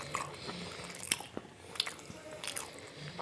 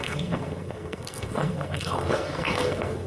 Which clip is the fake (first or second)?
second